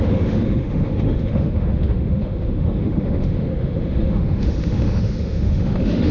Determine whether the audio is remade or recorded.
remade